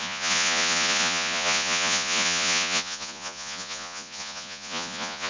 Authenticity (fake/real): fake